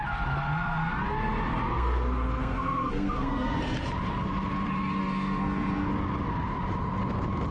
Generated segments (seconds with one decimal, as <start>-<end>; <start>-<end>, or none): 1.7-3.6; 5.0-5.9

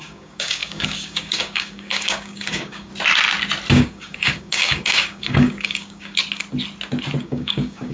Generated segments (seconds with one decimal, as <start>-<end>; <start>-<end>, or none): 0.0-2.9; 3.7-6.2; 7.2-7.9

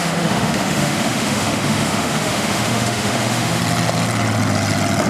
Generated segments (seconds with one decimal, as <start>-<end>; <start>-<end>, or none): 0.0-3.6

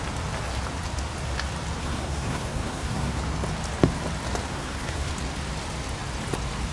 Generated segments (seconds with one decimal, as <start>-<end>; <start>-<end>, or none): 1.8-3.2; 4.5-5.1